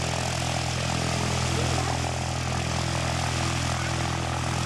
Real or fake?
real